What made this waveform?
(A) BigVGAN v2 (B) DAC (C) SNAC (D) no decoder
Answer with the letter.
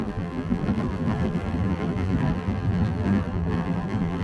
A